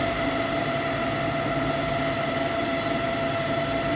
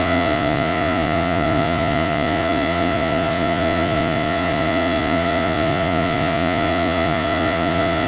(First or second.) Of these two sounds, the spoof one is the second